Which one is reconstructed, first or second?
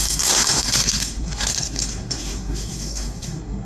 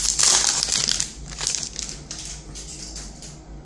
first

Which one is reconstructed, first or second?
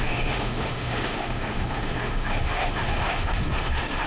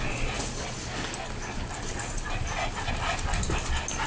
first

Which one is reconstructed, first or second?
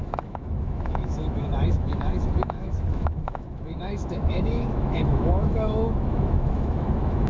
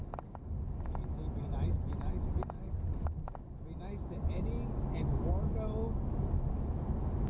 first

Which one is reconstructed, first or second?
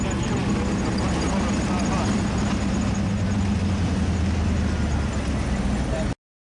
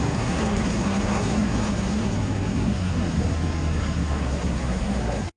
second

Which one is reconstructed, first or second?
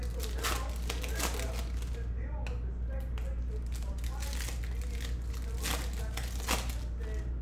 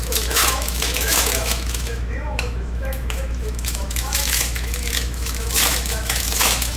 second